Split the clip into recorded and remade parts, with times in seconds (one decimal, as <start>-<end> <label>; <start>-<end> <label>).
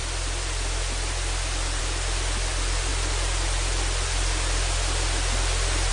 0.0-5.9 recorded